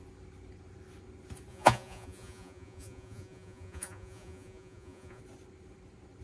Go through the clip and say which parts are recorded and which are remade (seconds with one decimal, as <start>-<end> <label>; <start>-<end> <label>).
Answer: 0.0-1.5 recorded; 1.5-5.2 remade; 5.2-6.2 recorded